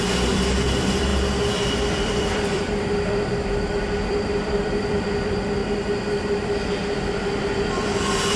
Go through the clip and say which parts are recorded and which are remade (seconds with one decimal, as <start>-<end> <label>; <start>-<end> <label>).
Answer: 0.0-1.1 remade; 1.1-2.0 recorded; 2.0-5.6 remade; 5.6-7.5 recorded; 7.5-8.4 remade